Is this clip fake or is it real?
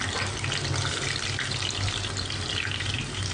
real